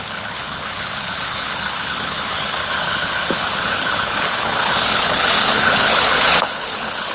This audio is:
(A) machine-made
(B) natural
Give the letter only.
A